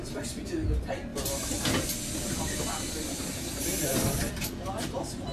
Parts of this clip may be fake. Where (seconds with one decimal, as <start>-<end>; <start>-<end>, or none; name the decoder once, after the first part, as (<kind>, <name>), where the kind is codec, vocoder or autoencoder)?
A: none